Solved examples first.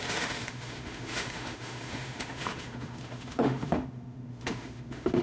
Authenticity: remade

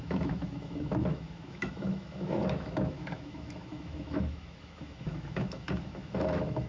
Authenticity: remade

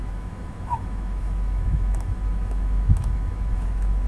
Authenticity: remade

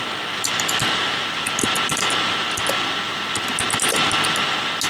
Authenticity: recorded